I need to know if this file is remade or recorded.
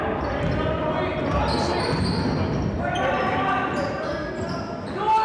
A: recorded